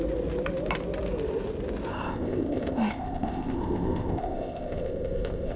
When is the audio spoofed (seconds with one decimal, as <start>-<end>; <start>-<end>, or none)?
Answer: 1.9-5.6